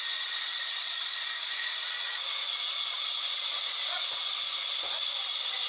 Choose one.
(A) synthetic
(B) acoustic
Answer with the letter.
A